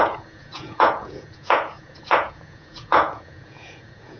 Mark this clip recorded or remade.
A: remade